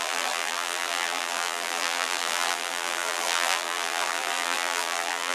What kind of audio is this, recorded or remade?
remade